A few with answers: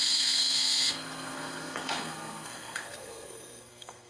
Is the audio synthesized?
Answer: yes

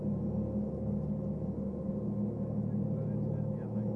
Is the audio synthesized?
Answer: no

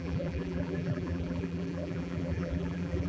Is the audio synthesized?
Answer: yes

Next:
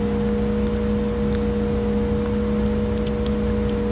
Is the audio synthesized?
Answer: no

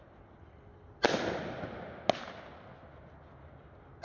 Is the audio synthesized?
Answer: no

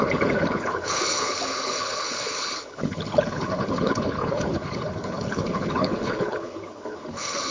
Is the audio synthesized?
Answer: yes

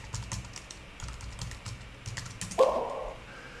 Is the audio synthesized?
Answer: no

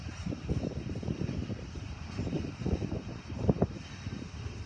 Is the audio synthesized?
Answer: no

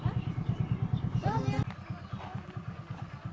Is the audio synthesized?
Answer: no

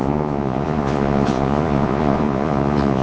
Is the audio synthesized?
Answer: yes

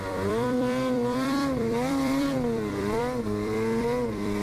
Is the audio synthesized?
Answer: yes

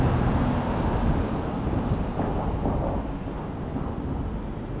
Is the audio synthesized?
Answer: no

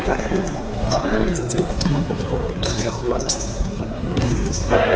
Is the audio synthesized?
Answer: yes